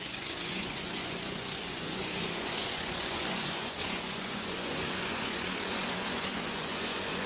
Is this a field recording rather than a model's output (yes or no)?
no